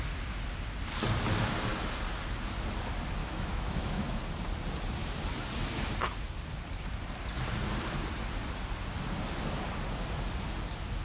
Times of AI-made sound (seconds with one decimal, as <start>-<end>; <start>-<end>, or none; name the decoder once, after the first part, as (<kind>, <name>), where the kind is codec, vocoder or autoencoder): 3.2-4.2 (autoencoder, DAC-VAE)